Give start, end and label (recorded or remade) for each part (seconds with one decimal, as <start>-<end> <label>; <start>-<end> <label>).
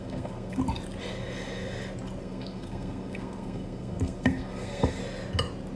0.0-0.6 remade; 0.6-2.2 recorded; 2.2-5.0 remade; 5.0-5.8 recorded